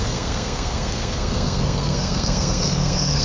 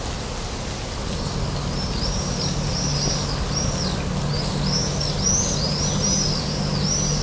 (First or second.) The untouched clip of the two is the second